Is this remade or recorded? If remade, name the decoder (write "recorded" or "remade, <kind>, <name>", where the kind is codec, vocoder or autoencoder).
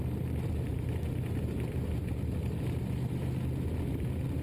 recorded